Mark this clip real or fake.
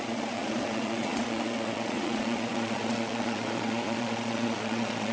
fake